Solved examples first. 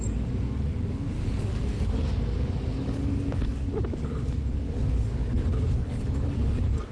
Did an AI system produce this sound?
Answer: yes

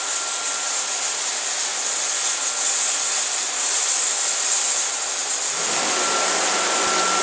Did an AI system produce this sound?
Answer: no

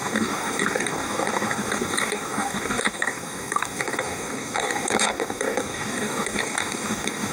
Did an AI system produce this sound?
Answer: yes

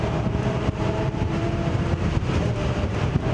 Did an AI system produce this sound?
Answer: yes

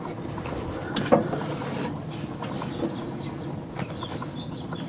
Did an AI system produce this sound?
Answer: no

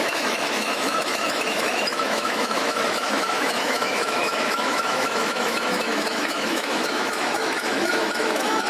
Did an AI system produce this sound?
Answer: yes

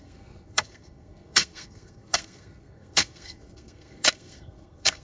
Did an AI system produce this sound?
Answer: yes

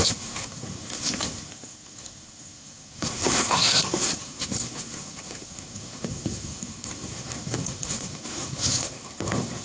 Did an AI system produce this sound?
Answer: yes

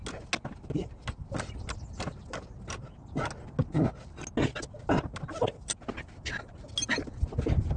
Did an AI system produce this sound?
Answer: no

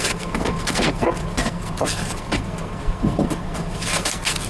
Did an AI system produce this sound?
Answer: yes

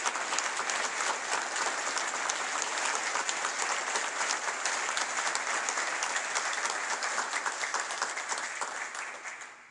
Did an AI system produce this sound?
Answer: no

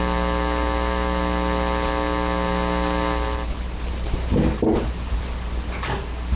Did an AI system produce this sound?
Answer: no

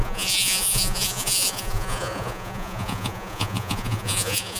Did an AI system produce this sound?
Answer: yes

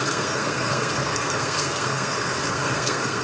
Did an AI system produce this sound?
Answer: yes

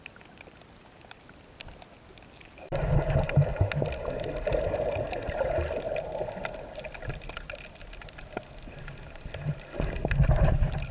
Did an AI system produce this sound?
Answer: no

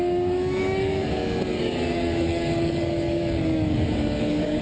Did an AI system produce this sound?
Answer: yes